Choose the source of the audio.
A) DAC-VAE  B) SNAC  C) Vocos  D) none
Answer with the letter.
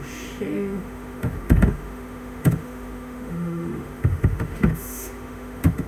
A